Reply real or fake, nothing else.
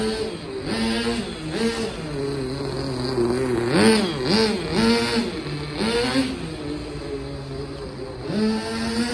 real